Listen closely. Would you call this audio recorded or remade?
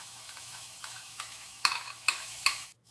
remade